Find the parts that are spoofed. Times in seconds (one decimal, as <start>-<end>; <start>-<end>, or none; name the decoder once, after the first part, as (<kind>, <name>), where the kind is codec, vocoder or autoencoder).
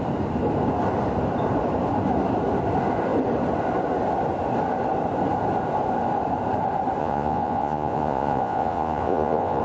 7.0-9.6 (vocoder, Vocos)